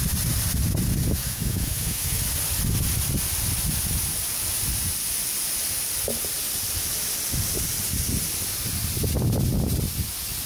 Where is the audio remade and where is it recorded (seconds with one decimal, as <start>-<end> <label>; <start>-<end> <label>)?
0.0-1.2 recorded; 1.2-2.2 remade; 2.2-10.5 recorded